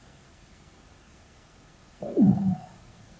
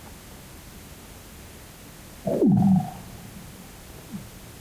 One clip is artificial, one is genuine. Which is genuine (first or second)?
second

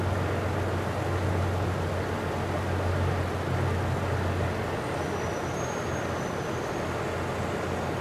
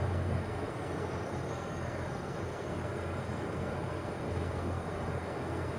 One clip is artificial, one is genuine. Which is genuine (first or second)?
first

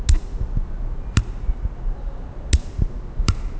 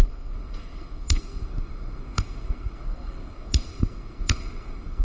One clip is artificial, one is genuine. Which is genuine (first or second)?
first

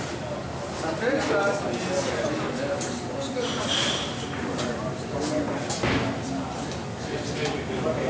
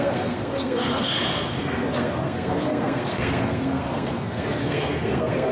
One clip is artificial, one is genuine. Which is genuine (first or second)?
first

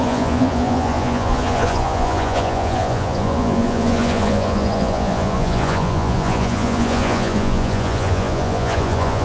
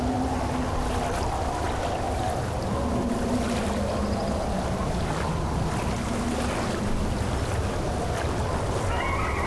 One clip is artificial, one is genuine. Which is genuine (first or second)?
second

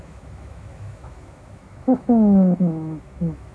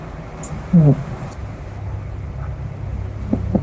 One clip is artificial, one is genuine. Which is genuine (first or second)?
second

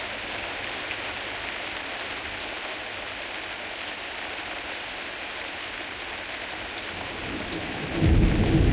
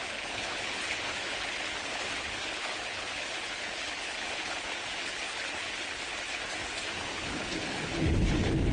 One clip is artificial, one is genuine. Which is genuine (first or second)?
first